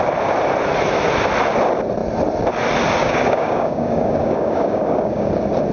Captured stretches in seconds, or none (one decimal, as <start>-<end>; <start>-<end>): 0.0-3.0; 5.3-5.7